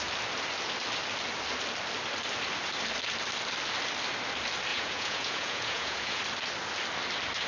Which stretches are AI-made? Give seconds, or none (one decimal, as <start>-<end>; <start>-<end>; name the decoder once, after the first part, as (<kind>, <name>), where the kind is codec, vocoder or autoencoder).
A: 4.7-6.2 (vocoder, Vocos)